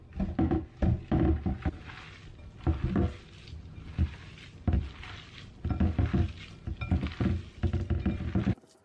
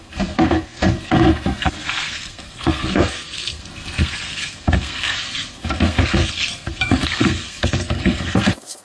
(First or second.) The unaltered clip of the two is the first